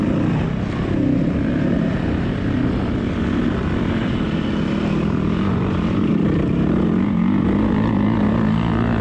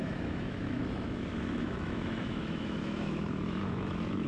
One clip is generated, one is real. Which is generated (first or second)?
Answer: second